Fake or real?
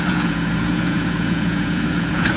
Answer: fake